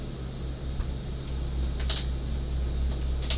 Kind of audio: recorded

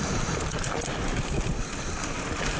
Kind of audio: remade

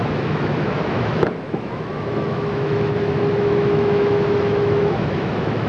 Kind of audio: remade